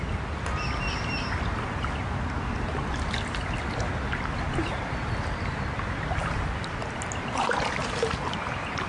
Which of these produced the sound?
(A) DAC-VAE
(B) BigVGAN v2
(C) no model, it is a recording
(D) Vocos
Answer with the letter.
C